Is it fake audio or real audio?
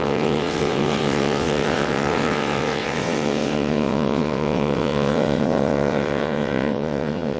fake